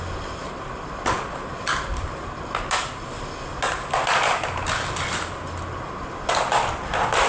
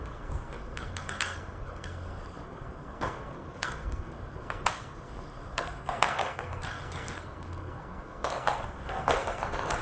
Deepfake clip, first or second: second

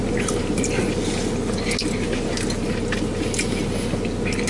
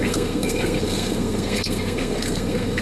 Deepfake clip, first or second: second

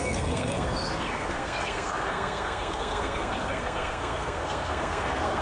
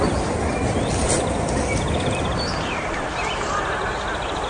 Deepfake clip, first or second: first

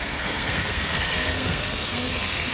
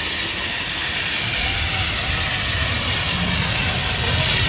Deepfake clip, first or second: first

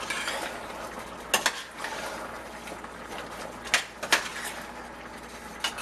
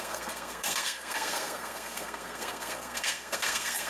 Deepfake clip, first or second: second